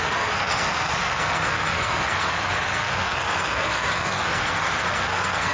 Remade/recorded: remade